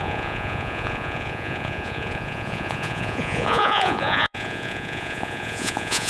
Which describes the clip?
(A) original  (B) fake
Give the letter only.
B